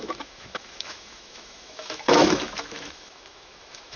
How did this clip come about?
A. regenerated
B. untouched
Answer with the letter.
A